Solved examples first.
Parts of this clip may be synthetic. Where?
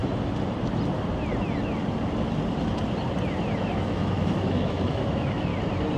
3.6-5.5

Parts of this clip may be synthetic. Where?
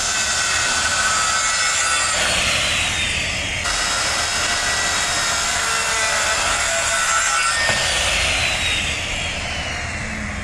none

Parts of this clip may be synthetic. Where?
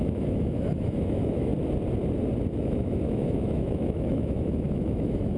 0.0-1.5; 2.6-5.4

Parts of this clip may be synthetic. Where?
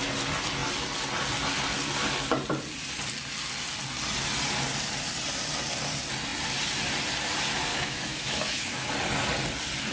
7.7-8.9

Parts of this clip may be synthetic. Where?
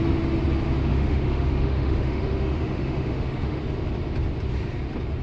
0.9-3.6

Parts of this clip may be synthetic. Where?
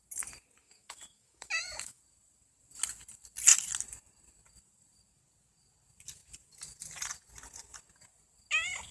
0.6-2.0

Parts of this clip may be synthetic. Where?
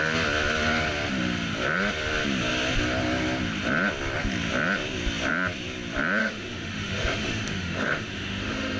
6.2-8.8